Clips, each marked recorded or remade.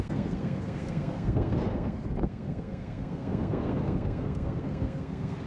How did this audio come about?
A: remade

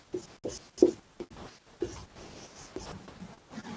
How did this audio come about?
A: recorded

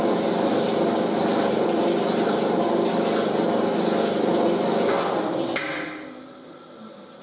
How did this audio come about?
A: recorded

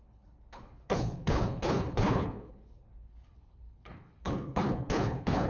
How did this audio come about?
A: remade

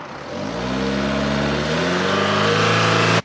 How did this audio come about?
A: recorded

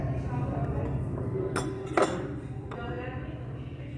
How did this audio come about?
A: recorded